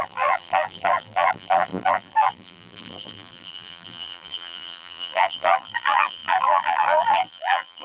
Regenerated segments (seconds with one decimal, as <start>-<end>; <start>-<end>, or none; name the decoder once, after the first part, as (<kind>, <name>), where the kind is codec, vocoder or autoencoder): 0.0-7.8 (vocoder, BigVGAN v2)